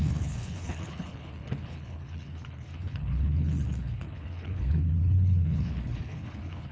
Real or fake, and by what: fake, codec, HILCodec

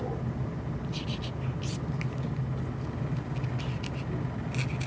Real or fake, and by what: real